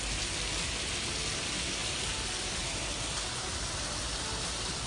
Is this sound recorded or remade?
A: recorded